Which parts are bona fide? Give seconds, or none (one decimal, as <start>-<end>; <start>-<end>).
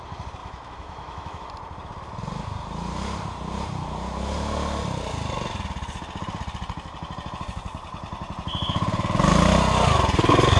0.0-0.4; 1.5-10.6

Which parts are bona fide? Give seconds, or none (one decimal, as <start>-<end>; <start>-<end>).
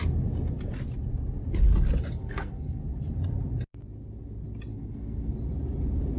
0.0-2.2; 2.8-4.7; 5.3-6.2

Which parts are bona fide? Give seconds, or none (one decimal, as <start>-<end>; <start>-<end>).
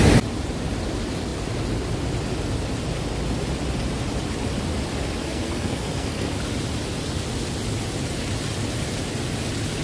0.0-5.2; 6.4-9.8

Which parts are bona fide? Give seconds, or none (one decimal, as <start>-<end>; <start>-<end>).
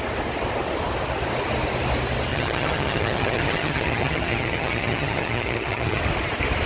0.0-2.3; 6.0-6.7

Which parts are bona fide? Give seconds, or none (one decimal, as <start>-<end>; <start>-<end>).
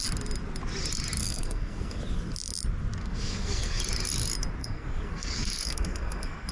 0.0-1.2; 2.0-3.0; 3.8-4.6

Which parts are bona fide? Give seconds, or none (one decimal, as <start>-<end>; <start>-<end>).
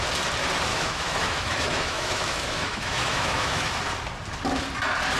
0.0-0.7; 3.8-5.2